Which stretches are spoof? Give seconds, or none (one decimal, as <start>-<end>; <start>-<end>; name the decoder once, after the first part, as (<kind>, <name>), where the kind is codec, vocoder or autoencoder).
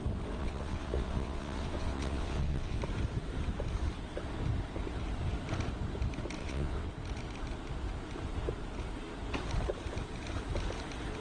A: 0.4-2.8 (vocoder, WaveNeXt); 6.4-6.9